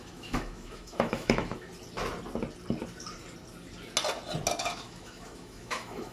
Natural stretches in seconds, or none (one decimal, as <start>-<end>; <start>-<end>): 1.7-4.6